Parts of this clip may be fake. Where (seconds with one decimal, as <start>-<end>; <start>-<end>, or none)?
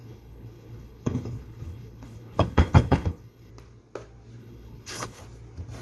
0.0-3.5; 4.4-5.2